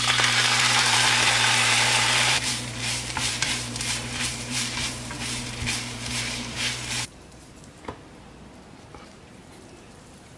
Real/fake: fake